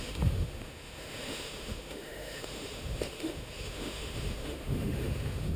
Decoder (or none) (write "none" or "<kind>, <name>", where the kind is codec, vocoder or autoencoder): autoencoder, DAC-VAE